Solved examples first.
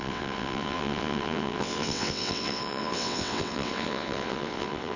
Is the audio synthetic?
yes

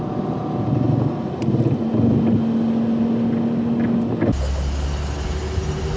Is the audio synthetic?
no